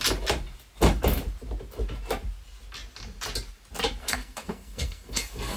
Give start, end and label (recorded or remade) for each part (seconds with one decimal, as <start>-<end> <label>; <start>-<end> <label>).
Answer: 0.0-4.0 recorded; 4.0-5.6 remade